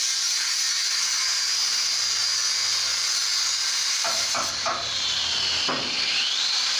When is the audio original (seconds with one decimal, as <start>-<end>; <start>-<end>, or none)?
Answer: 2.2-3.8